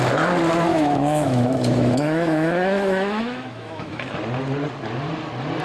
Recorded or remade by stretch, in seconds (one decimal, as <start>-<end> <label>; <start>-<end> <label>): 0.0-0.7 recorded; 0.7-4.1 remade; 4.1-5.6 recorded